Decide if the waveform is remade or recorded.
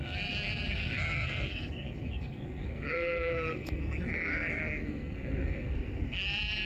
remade